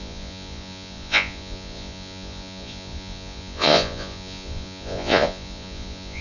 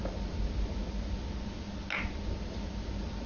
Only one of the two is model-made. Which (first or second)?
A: first